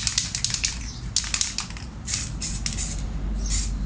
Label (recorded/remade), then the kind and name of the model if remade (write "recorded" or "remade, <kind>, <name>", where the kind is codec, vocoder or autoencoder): recorded